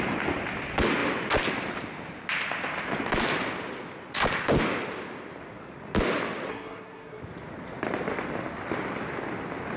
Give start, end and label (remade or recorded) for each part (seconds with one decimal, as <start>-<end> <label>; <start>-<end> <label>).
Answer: 0.0-6.5 recorded; 6.5-7.2 remade; 7.2-9.8 recorded